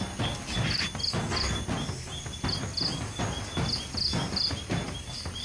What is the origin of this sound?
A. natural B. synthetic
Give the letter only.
A